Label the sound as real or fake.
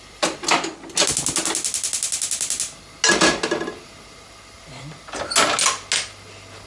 real